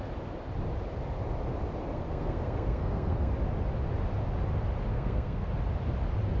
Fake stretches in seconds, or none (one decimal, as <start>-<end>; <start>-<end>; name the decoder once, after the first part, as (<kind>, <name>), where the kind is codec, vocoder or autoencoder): 1.9-3.3 (codec, SNAC); 4.9-5.5